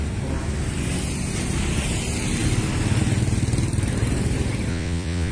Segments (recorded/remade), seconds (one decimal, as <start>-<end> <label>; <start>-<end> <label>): 0.0-4.7 recorded; 4.7-5.3 remade